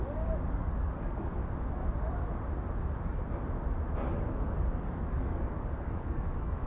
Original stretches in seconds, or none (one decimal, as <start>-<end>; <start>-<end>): 1.4-4.2

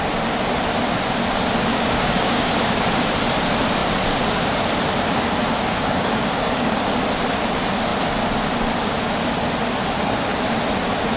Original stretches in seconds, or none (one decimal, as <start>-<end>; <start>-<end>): 0.0-1.7; 2.5-5.5; 6.8-11.2

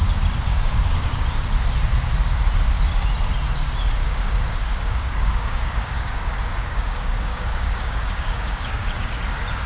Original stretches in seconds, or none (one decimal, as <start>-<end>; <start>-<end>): 0.0-0.5; 1.1-4.0; 9.2-9.7

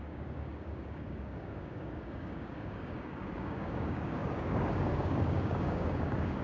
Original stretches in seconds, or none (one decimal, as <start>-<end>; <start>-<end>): none

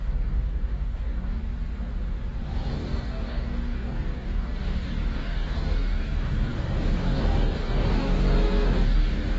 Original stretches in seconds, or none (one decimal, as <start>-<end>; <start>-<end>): 1.4-2.7

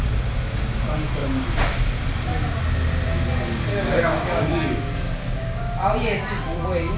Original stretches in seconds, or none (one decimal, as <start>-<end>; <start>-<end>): 0.0-3.7; 5.6-7.0